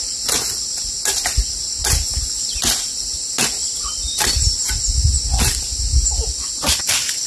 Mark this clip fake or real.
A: real